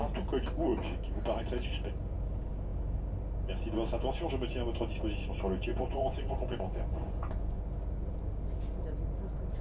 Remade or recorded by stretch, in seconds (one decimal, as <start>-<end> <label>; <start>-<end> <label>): 0.0-5.7 recorded; 5.7-7.6 remade; 7.6-9.6 recorded